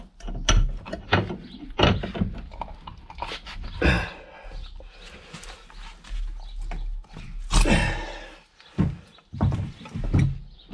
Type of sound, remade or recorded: recorded